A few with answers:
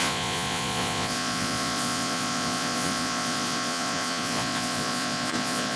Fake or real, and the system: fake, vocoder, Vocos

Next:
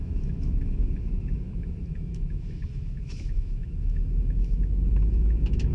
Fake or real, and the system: fake, autoencoder, DAC-VAE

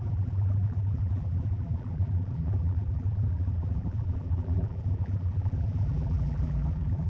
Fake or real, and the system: fake, vocoder, BigVGAN v2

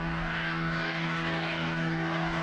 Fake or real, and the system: fake, codec, DAC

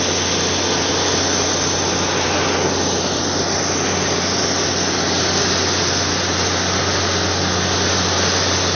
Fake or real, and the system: real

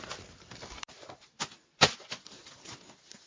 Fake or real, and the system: real